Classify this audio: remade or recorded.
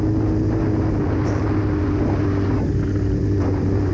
recorded